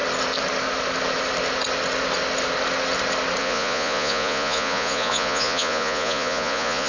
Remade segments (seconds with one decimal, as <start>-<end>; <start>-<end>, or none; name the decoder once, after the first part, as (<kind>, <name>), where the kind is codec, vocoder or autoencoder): 3.4-6.9 (vocoder, Vocos)